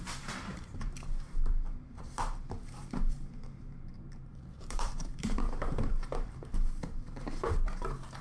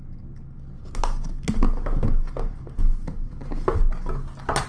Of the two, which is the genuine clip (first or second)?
second